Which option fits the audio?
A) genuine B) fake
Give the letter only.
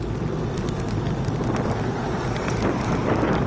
A